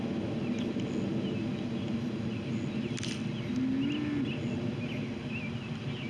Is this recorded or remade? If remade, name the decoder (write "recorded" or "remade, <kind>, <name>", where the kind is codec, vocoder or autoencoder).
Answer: recorded